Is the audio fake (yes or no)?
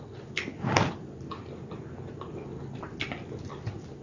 no